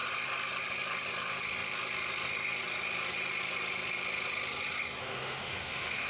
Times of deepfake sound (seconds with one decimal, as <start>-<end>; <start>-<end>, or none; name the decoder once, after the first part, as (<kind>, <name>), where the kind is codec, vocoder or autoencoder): 5.0-6.1 (autoencoder, DAC-VAE)